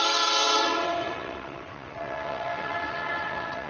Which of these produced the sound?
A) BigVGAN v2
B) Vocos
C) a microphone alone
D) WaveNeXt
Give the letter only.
D